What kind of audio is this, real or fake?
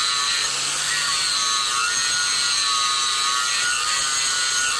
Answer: real